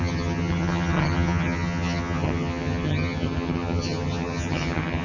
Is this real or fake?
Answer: fake